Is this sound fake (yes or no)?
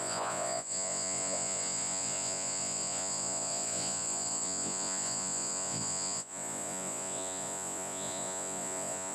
yes